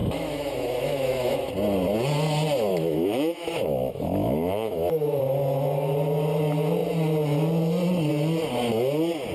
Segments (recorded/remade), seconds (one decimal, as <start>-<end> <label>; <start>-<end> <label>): 0.0-1.5 remade; 1.5-2.7 recorded; 2.7-5.2 remade; 5.2-9.3 recorded

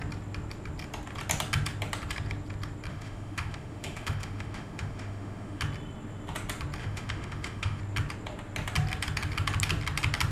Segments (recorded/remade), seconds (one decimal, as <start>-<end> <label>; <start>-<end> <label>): 0.0-2.9 recorded; 2.9-5.6 remade; 5.6-6.8 recorded; 6.8-7.8 remade; 7.8-10.3 recorded

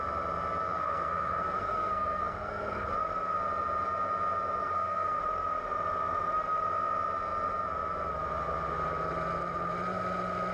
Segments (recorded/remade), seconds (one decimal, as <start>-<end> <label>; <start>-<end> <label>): 0.0-0.6 recorded; 0.6-2.9 remade; 2.9-4.6 recorded; 4.6-5.2 remade; 5.2-10.5 recorded

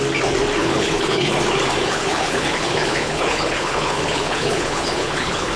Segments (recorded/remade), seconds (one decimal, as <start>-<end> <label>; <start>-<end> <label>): 0.0-0.6 recorded; 0.6-1.3 remade; 1.3-1.8 recorded; 1.8-5.6 remade

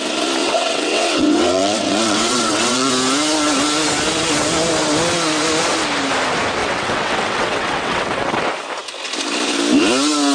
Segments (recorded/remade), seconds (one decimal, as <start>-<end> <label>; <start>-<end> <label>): 0.0-0.4 recorded; 0.4-2.9 remade; 2.9-6.6 recorded; 6.6-8.4 remade; 8.4-10.3 recorded

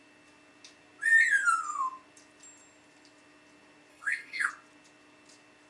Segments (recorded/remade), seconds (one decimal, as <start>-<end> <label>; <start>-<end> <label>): 0.0-3.9 recorded; 3.9-4.5 remade; 4.5-5.7 recorded